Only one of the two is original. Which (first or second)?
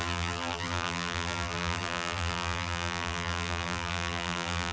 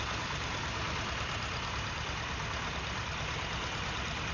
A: second